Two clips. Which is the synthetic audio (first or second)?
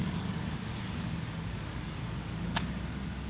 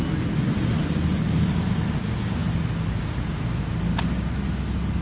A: first